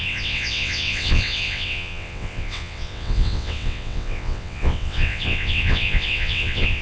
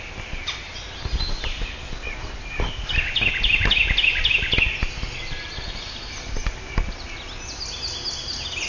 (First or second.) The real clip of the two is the second